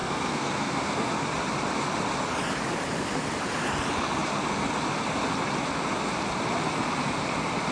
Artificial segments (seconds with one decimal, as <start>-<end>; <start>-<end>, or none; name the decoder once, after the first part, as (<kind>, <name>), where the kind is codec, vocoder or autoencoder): 0.0-1.1 (codec, SNAC)